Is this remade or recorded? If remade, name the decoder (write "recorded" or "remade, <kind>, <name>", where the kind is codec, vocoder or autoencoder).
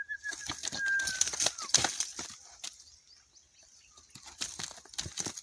recorded